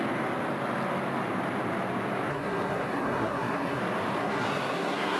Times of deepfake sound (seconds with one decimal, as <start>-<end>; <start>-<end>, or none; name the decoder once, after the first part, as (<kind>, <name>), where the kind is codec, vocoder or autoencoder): 2.3-3.8 (codec, SNAC); 4.2-5.2